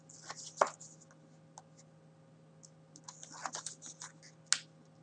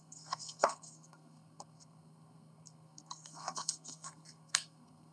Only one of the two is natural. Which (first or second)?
first